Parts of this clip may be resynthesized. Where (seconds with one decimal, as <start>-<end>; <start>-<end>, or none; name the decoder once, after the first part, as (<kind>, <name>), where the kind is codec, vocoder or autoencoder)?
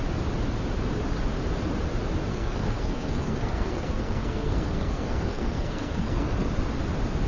2.3-6.5 (codec, SNAC)